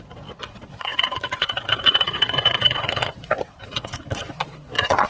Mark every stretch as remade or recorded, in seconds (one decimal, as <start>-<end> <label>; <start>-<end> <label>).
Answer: 0.0-5.1 remade